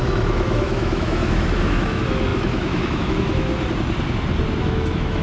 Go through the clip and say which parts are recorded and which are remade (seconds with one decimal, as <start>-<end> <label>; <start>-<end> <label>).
0.0-3.5 remade; 3.5-4.6 recorded; 4.6-5.2 remade